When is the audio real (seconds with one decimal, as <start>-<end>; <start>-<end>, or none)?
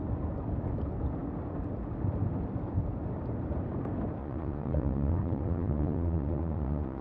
0.0-4.2